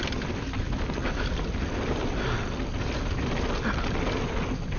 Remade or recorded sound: recorded